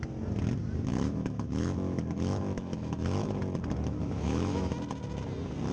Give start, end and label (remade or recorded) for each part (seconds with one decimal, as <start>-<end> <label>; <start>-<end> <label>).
0.0-0.9 recorded; 0.9-3.4 remade; 3.4-4.0 recorded; 4.0-4.7 remade; 4.7-5.7 recorded